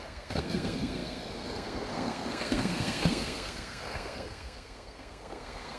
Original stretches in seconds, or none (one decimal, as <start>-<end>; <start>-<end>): none